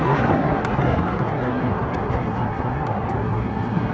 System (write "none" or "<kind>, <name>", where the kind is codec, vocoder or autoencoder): codec, SNAC